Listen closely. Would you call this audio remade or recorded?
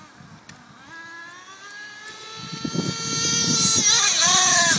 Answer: recorded